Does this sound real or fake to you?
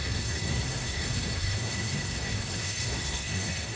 fake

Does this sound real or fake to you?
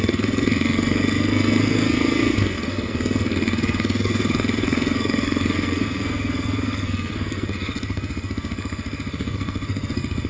fake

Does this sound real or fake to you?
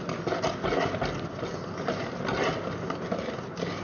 real